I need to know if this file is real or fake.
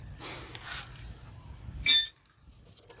real